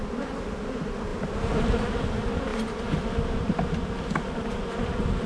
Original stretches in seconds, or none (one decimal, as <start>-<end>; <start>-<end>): 0.0-5.3